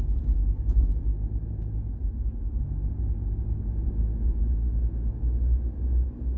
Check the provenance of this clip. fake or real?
real